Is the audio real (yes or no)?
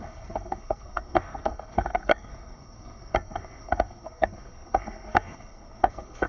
no